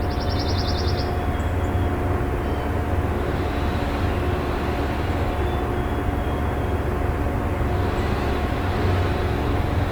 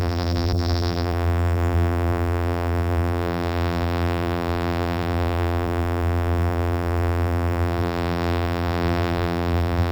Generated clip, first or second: second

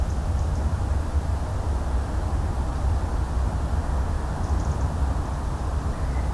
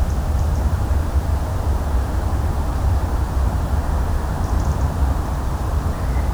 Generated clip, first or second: second